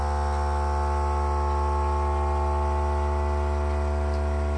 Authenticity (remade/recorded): recorded